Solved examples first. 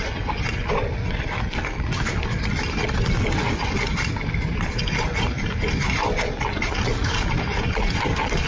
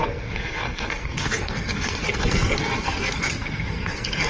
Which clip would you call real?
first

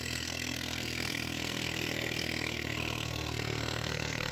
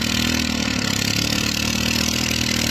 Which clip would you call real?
second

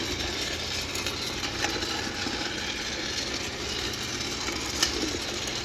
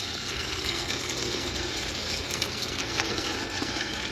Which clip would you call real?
first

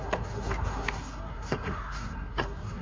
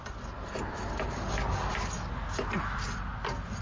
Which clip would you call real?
second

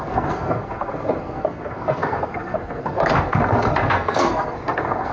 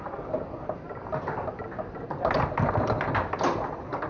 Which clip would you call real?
second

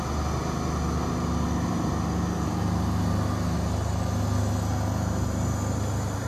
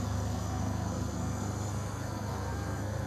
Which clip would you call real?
first